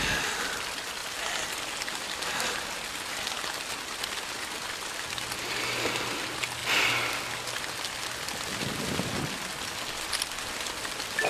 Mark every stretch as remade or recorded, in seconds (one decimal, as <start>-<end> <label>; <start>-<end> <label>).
0.0-11.3 recorded